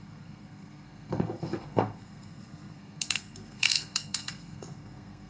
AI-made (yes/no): yes